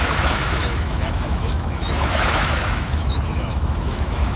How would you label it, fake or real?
fake